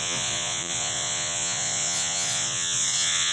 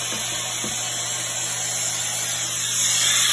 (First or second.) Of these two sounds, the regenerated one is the first